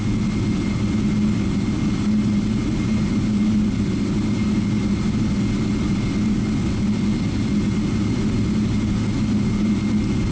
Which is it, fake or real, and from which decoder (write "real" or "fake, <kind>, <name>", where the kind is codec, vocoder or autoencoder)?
real